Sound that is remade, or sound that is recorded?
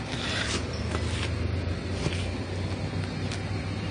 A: recorded